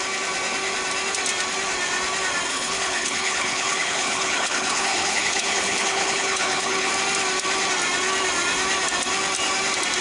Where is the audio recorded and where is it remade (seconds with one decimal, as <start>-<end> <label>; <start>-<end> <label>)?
0.0-2.5 recorded; 2.5-6.9 remade; 6.9-10.0 recorded